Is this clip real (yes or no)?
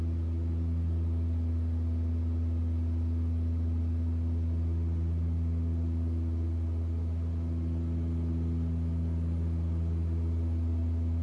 yes